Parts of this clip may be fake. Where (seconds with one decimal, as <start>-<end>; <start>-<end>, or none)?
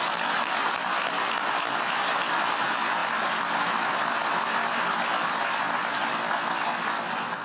none